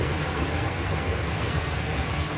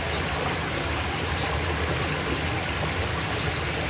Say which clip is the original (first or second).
second